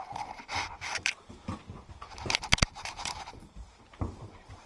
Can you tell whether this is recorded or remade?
remade